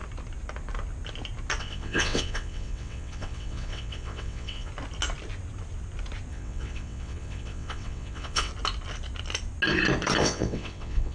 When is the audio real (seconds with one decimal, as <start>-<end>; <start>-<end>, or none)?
0.0-1.6; 4.7-6.3; 8.5-10.2